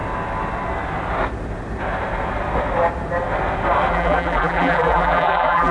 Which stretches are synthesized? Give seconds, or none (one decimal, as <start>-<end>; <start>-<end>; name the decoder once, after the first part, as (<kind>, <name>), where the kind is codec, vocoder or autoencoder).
3.9-5.7 (vocoder, BigVGAN v2)